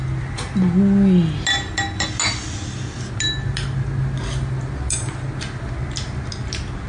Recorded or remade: recorded